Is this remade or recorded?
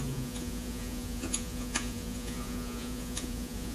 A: remade